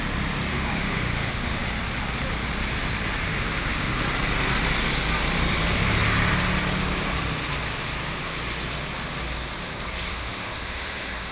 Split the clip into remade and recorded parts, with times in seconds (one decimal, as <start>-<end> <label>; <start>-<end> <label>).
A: 0.0-0.5 recorded; 0.5-1.6 remade; 1.6-3.3 recorded; 3.3-4.0 remade; 4.0-10.1 recorded; 10.1-11.3 remade